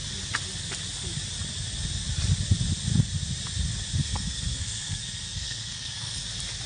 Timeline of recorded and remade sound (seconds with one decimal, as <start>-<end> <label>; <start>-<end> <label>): 0.0-4.0 recorded; 4.0-6.2 remade; 6.2-6.7 recorded